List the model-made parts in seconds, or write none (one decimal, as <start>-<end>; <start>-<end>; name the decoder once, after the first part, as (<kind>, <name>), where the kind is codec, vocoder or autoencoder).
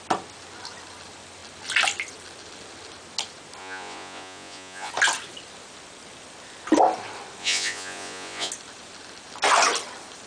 3.6-4.9 (vocoder, Vocos); 7.4-8.5